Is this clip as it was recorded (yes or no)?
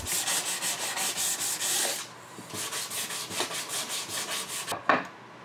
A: yes